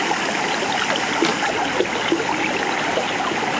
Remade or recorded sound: recorded